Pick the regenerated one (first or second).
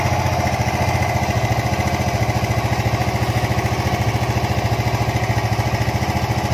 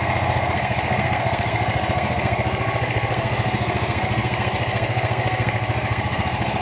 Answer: second